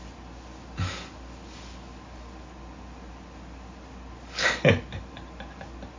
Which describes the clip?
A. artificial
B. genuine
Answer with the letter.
B